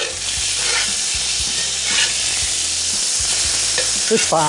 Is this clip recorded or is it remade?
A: recorded